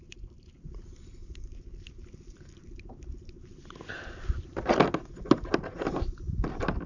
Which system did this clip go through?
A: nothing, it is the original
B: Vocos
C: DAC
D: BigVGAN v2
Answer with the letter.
A